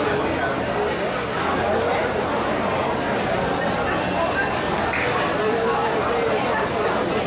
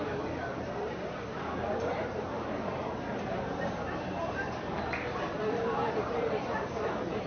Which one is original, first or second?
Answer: first